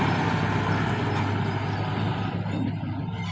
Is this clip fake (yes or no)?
no